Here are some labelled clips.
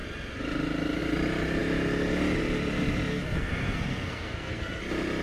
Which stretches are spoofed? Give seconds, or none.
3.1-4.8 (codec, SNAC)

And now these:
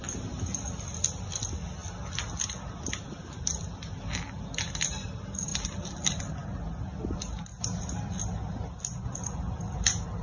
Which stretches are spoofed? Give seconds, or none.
none

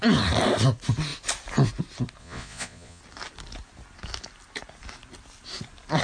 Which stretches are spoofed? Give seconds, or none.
2.2-3.0 (vocoder, Vocos)